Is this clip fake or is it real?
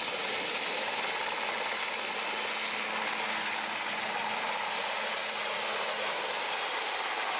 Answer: real